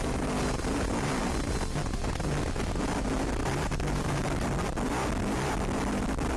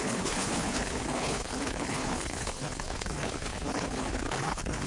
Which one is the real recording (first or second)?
first